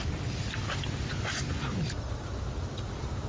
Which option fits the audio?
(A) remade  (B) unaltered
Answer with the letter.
B